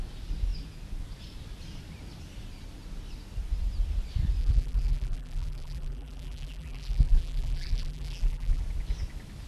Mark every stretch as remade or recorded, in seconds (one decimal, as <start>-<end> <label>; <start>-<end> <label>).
0.0-4.4 recorded; 4.4-8.6 remade; 8.6-9.5 recorded

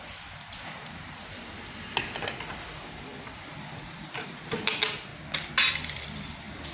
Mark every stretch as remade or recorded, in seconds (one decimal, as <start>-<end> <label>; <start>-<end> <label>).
0.0-5.1 remade; 5.1-5.7 recorded; 5.7-6.7 remade

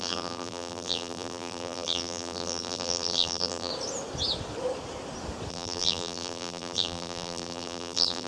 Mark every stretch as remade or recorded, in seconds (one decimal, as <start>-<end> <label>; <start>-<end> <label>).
0.0-3.7 remade; 3.7-5.5 recorded; 5.5-8.3 remade

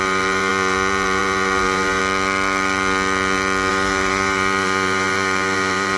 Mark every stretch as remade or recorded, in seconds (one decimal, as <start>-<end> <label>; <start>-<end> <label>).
0.0-2.0 remade; 2.0-3.7 recorded; 3.7-6.0 remade

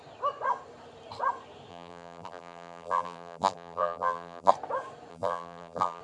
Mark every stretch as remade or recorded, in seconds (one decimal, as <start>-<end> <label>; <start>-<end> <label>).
0.0-1.7 recorded; 1.7-4.5 remade; 4.5-5.1 recorded; 5.1-6.0 remade

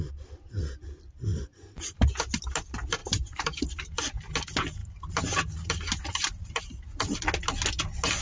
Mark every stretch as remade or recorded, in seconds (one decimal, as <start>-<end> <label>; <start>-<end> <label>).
0.0-1.3 recorded; 1.3-2.1 remade; 2.1-3.0 recorded; 3.0-3.6 remade; 3.6-4.8 recorded; 4.8-6.6 remade; 6.6-8.2 recorded

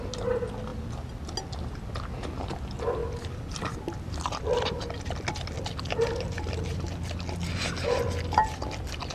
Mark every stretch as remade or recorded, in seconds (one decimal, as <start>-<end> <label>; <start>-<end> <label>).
0.0-3.0 recorded; 3.0-6.1 remade; 6.1-9.1 recorded